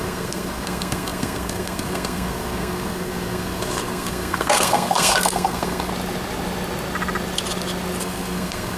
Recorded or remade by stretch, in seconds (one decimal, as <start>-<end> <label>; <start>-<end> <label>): 0.0-5.9 remade; 5.9-8.0 recorded; 8.0-8.8 remade